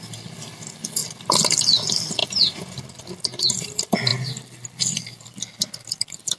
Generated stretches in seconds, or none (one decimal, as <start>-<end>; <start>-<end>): 4.1-5.4